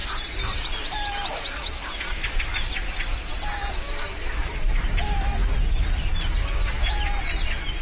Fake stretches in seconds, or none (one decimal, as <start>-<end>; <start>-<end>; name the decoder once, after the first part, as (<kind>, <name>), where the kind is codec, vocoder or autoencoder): none